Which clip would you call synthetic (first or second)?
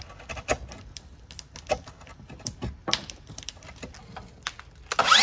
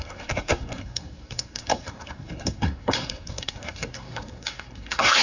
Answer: second